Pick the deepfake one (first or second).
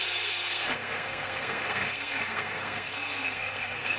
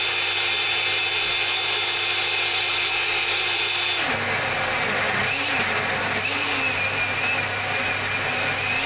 first